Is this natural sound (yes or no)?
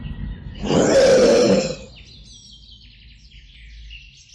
yes